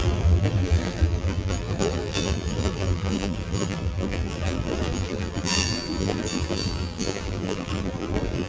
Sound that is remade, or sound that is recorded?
remade